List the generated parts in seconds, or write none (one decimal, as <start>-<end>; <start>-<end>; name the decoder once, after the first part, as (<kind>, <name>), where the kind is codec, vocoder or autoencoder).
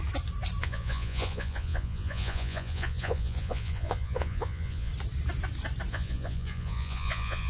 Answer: 0.6-4.9 (vocoder, Vocos); 5.9-7.5